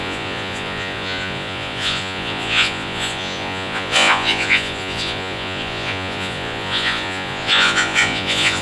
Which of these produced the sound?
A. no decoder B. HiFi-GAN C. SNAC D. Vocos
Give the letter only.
D